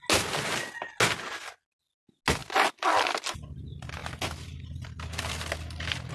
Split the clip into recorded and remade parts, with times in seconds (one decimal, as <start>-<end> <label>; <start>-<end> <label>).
0.0-6.1 recorded